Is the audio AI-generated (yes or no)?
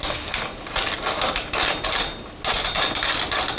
no